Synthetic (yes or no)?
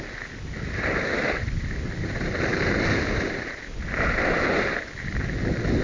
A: no